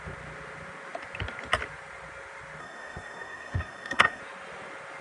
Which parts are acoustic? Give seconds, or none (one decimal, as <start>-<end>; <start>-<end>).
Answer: 0.0-2.6; 4.2-5.0

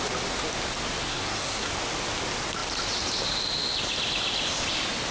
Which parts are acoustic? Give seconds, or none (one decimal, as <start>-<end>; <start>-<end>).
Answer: 0.0-1.1; 1.7-5.1